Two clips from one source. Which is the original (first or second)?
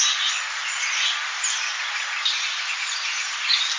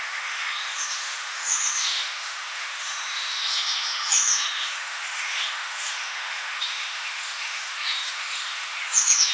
first